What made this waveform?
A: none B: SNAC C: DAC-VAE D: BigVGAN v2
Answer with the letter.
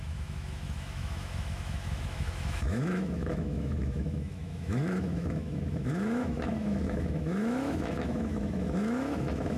C